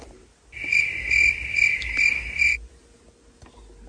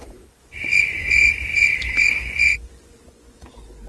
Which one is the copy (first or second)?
second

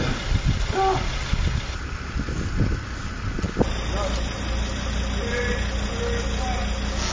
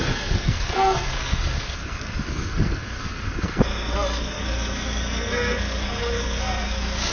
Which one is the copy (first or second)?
second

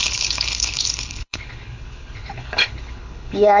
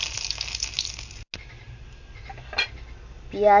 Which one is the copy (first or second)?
first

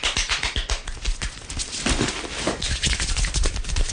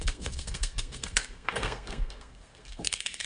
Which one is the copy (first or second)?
second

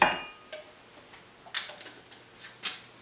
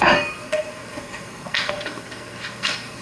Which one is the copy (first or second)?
second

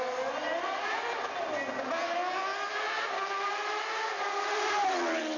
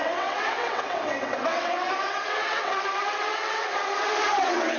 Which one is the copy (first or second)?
second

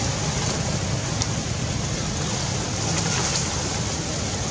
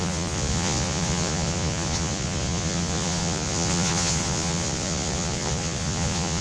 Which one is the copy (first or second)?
second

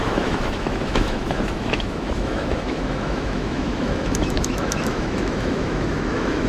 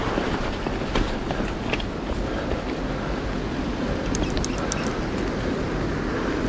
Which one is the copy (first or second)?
first